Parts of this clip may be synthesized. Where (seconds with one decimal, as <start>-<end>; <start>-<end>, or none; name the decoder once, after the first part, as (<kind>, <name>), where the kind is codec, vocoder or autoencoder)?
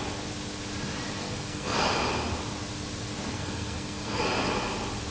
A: 1.2-1.9 (codec, SNAC); 3.3-4.2